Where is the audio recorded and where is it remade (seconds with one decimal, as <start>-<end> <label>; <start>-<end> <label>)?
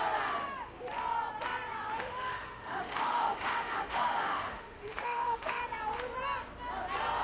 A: 0.0-1.9 recorded; 1.9-5.6 remade; 5.6-7.2 recorded